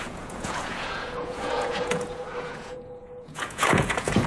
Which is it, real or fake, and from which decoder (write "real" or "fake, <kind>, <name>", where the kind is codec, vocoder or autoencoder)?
fake, vocoder, Vocos